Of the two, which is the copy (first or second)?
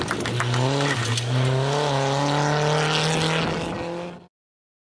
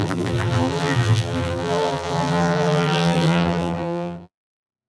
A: second